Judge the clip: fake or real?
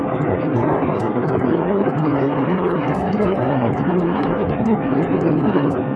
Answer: fake